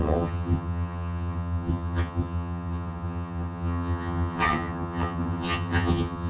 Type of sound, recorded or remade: remade